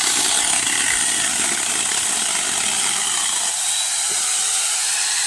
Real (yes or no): yes